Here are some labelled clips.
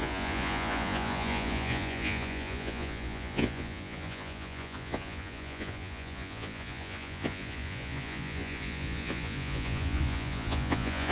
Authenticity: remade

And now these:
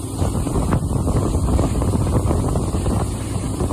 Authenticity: recorded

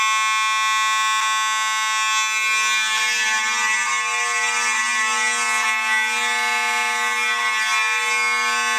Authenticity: recorded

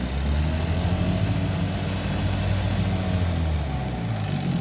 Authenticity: recorded